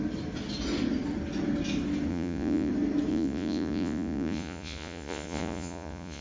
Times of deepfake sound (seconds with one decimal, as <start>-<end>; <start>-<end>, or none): 2.1-2.7; 3.1-6.2